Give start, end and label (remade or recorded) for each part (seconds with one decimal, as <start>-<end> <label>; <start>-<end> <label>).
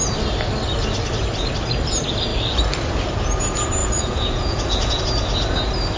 0.0-3.8 recorded; 3.8-5.0 remade; 5.0-6.0 recorded